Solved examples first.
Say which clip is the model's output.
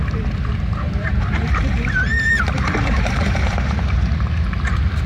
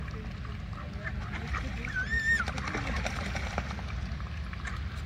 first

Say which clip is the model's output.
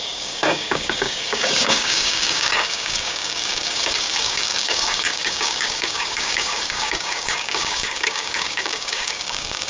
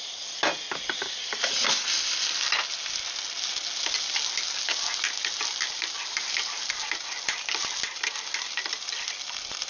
first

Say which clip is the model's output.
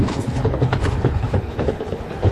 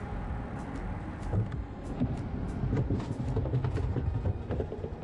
first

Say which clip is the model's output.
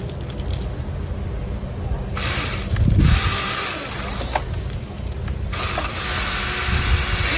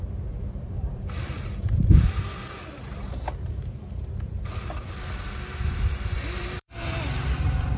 second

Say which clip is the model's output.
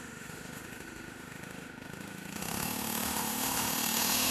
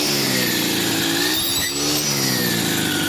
first